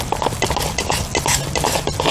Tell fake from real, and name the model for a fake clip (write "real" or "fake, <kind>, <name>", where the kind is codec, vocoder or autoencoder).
real